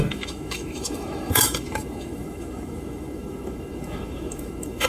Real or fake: fake